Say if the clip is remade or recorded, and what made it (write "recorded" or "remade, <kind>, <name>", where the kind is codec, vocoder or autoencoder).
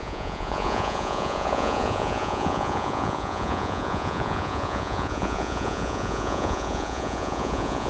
remade, vocoder, Vocos